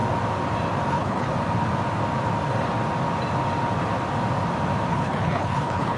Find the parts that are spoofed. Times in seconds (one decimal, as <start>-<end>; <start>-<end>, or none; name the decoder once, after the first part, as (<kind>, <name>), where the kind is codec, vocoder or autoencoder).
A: 0.9-1.3 (codec, HILCodec); 4.9-6.0